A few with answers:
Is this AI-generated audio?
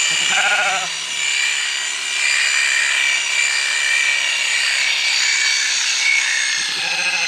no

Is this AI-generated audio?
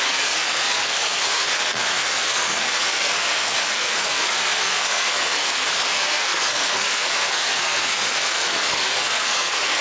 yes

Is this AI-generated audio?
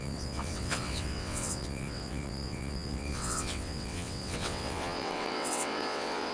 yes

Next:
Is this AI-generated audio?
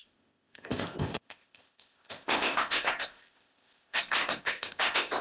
yes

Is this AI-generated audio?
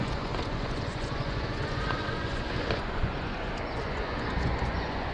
yes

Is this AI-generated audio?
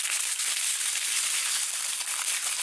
no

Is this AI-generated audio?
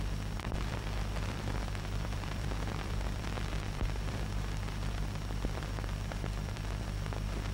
yes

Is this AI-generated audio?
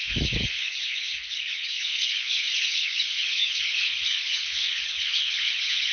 yes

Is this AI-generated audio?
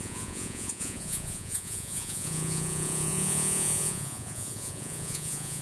yes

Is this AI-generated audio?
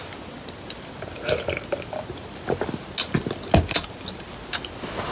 no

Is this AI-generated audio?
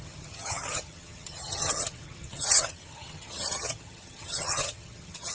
yes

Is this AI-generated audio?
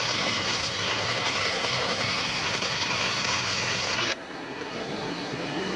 yes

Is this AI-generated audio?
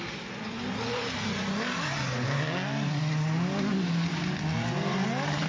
no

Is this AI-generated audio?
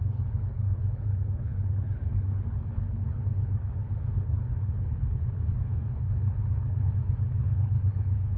yes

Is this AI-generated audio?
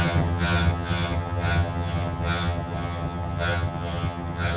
yes